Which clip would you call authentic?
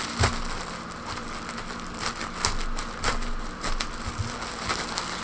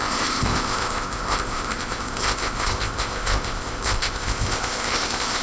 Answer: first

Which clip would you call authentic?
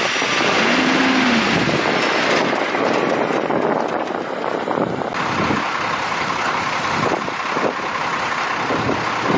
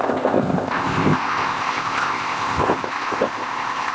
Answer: first